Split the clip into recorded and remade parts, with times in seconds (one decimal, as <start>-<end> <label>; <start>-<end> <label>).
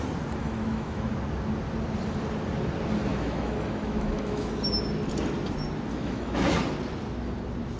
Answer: 0.0-0.4 recorded; 0.4-1.1 remade; 1.1-3.1 recorded; 3.1-4.5 remade; 4.5-5.9 recorded; 5.9-6.6 remade; 6.6-7.8 recorded